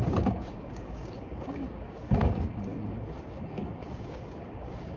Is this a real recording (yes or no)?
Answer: no